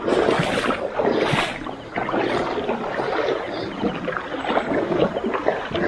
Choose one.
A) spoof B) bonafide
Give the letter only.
B